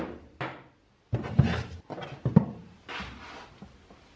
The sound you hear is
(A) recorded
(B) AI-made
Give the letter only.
A